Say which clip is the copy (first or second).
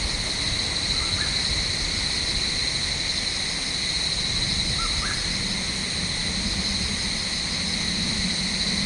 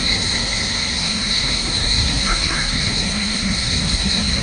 second